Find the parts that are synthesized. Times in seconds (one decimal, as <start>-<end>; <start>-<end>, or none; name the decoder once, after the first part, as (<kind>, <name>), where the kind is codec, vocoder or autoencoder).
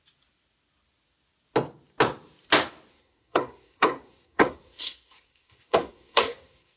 2.9-6.8 (codec, SNAC)